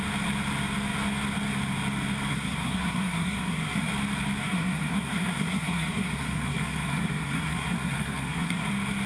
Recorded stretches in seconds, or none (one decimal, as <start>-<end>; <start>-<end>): 0.0-2.3; 3.9-4.4; 8.7-9.1